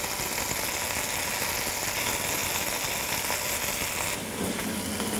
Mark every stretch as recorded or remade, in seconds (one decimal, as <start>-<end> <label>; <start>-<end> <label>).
0.0-5.2 recorded